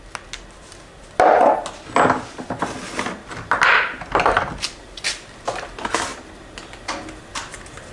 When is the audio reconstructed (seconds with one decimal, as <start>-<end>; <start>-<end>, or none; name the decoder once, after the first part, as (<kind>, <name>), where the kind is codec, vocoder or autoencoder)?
none